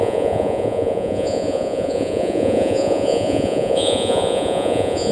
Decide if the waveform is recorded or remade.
remade